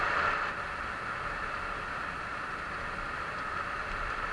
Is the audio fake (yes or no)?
no